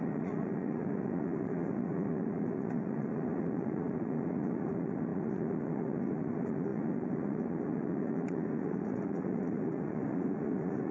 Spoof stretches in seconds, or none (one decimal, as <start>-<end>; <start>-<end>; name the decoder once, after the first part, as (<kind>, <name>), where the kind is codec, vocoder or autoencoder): 0.0-10.9 (vocoder, Vocos)